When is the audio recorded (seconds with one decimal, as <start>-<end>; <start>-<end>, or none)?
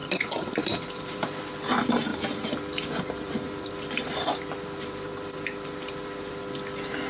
1.4-2.1; 6.4-7.1